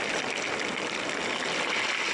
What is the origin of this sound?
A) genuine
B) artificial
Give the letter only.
A